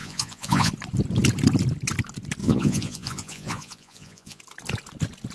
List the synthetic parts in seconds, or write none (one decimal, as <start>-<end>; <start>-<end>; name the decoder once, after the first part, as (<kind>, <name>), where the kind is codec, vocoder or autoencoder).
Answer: 0.0-0.7 (vocoder, Vocos); 2.4-4.4